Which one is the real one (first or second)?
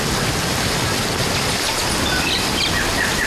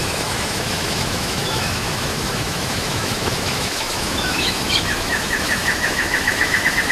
first